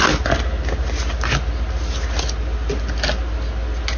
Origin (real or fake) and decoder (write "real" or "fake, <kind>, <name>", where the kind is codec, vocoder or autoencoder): real